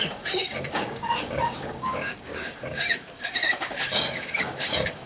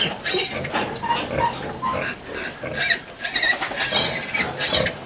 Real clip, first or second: second